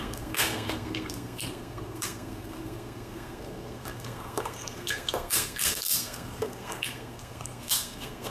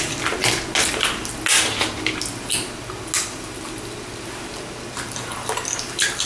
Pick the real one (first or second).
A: second